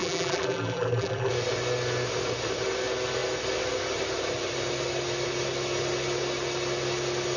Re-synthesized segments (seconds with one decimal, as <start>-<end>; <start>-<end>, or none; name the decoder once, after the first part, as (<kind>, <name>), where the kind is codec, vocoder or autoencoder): 0.0-1.3 (vocoder, BigVGAN v2)